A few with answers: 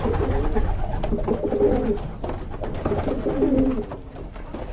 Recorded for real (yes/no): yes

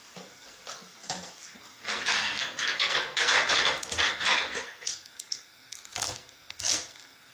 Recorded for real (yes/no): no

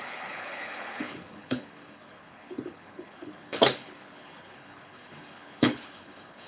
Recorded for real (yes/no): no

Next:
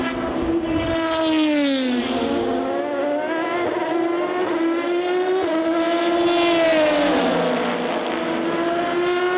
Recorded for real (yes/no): yes